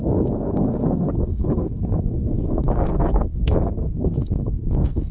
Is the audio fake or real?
fake